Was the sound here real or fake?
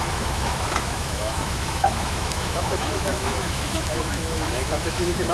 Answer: fake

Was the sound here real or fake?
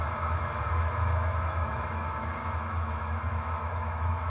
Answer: fake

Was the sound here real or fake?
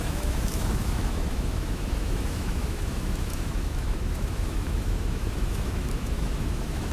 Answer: fake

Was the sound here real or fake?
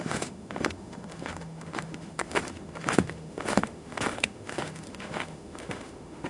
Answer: fake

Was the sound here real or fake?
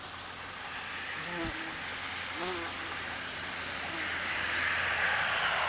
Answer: real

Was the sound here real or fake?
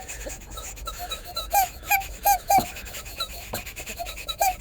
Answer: fake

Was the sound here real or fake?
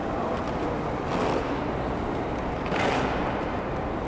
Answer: real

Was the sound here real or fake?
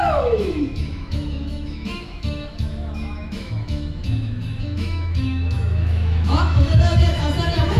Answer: fake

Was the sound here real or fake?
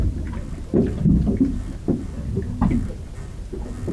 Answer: real